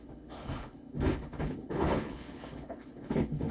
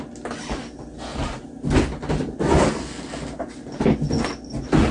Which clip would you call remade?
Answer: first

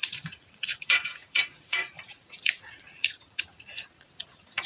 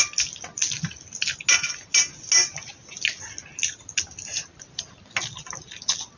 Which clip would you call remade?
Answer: first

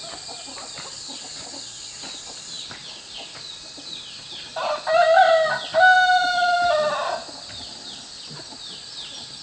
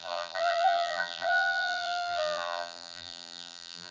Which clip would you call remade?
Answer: second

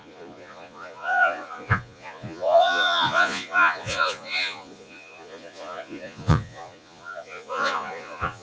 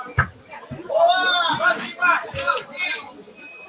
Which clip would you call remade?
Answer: first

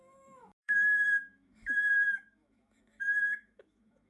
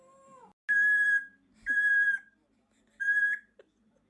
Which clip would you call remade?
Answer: first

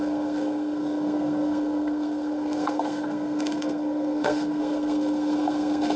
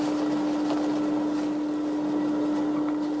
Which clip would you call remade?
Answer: first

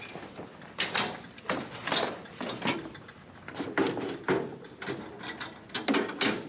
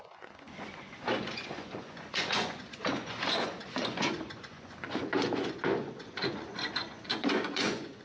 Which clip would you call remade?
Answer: second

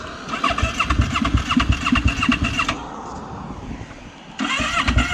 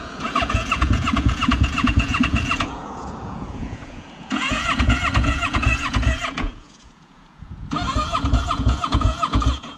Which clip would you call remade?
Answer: second